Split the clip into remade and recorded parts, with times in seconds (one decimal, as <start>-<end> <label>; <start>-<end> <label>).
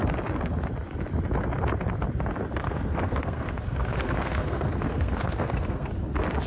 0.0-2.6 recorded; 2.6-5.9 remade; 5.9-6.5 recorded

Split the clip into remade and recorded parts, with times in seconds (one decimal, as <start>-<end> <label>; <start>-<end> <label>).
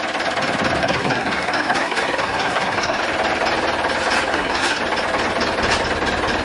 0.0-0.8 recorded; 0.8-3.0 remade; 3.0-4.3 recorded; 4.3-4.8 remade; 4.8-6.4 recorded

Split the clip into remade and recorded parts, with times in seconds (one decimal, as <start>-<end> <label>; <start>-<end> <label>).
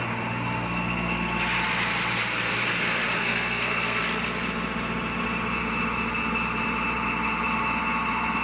0.0-3.2 recorded; 3.2-4.0 remade; 4.0-8.4 recorded